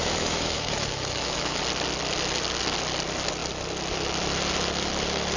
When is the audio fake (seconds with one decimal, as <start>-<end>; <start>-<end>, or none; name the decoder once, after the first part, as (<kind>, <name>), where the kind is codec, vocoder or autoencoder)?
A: 0.0-1.6 (autoencoder, DAC-VAE)